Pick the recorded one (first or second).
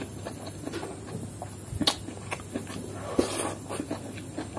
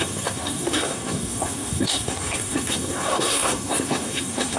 first